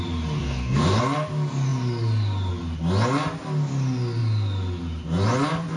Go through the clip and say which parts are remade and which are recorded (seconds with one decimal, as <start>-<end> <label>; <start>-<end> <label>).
0.0-0.4 recorded; 0.4-1.0 remade; 1.0-5.8 recorded